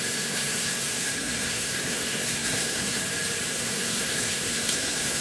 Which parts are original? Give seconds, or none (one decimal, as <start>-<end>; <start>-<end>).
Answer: 3.0-3.5